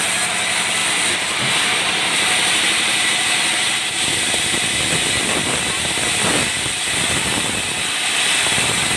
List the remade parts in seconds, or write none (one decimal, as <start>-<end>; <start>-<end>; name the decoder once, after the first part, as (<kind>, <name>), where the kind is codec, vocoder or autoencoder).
none